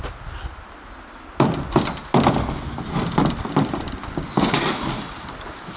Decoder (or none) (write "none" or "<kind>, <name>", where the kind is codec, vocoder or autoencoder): none